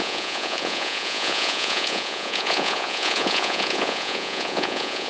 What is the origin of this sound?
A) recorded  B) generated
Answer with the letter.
B